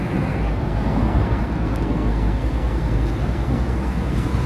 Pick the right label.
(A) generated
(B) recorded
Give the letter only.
A